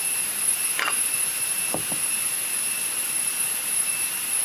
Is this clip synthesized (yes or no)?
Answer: yes